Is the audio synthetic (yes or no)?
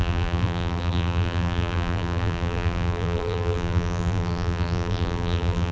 yes